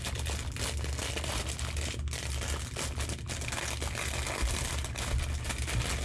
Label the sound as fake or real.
real